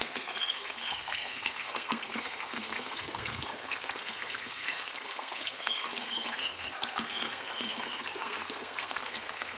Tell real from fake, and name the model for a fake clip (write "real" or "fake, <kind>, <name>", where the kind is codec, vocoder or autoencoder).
fake, codec, SNAC